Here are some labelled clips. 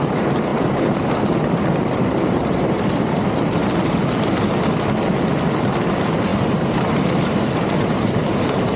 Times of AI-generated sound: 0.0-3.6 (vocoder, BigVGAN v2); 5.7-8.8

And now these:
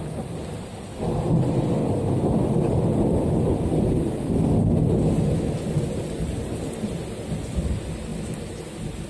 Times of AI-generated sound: none

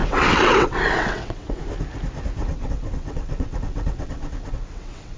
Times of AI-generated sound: 0.0-1.6 (vocoder, WaveNeXt); 2.4-5.2

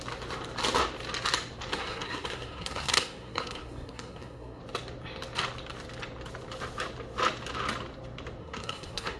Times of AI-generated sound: 1.7-4.6 (codec, SNAC); 8.4-9.2

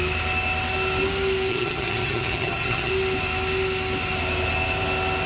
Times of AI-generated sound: 1.5-2.9 (vocoder, HiFi-GAN)

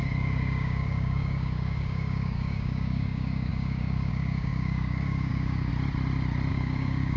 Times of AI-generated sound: 0.0-5.7 (codec, DAC); 6.5-7.2